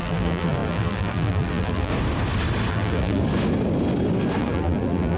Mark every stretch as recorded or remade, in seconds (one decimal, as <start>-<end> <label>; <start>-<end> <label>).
0.0-1.9 remade; 1.9-2.7 recorded; 2.7-3.2 remade; 3.2-4.4 recorded; 4.4-5.2 remade